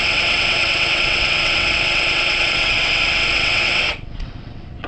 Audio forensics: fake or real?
fake